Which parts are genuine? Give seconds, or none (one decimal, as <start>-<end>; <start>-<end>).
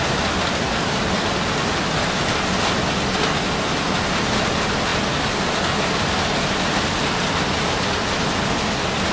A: 0.0-9.1